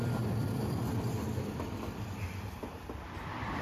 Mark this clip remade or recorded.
remade